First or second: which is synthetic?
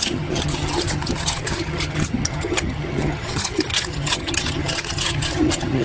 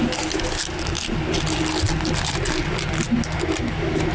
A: first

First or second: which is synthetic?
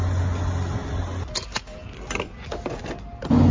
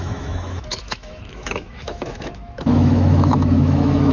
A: second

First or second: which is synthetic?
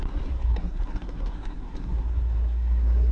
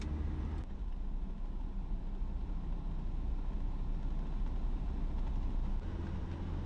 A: first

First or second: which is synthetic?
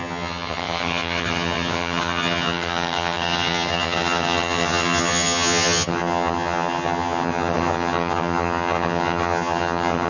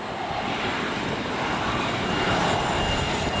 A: first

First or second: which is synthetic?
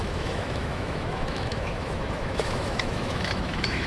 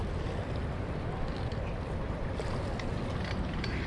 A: first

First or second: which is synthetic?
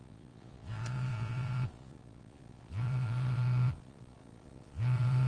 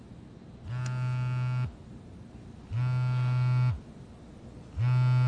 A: first